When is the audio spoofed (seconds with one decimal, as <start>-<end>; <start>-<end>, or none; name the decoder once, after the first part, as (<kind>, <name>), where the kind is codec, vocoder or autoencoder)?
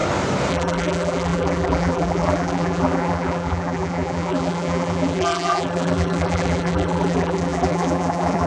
0.5-8.5 (vocoder, BigVGAN v2)